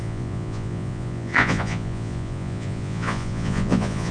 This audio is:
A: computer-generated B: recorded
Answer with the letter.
A